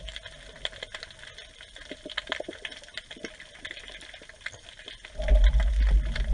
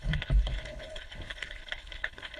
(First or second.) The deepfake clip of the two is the second